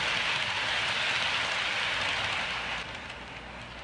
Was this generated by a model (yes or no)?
no